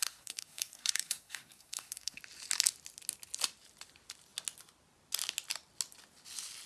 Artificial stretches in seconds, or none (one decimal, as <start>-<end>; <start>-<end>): 0.0-2.2